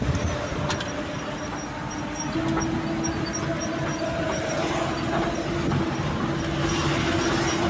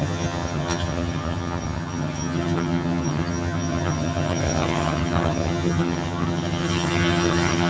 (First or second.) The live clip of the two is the first